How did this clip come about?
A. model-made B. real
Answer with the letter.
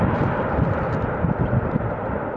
B